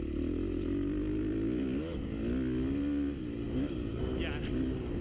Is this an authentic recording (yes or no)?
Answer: yes